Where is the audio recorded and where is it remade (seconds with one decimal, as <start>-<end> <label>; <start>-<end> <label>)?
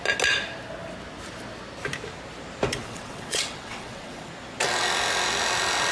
0.0-2.8 recorded; 2.8-4.3 remade; 4.3-5.9 recorded